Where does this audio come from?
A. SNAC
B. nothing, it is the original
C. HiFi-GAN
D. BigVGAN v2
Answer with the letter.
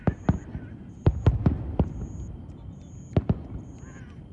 B